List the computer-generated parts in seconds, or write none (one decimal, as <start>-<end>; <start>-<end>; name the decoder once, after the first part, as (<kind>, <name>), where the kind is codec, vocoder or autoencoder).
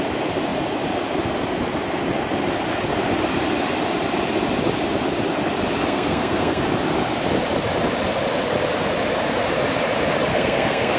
5.8-6.6 (codec, SNAC); 10.3-11.0